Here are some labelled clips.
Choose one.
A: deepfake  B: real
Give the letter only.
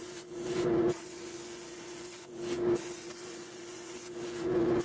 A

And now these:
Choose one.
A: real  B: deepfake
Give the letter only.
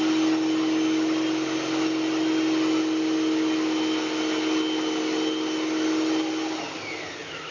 A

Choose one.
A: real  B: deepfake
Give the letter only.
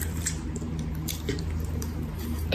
B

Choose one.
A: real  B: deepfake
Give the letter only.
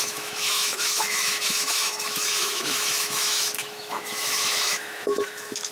B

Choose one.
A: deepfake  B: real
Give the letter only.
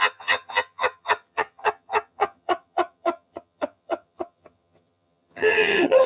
A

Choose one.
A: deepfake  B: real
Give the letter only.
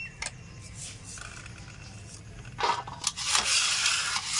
B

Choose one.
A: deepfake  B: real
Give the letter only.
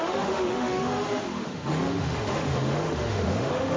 A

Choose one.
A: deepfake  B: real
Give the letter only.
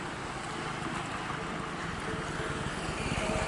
B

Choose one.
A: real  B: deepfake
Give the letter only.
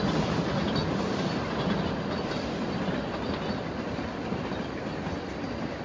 A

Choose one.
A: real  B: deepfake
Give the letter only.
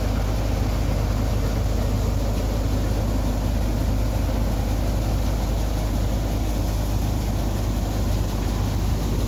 A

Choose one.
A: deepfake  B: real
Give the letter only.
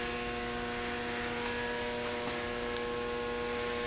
B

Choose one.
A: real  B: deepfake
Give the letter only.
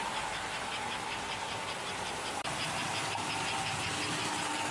A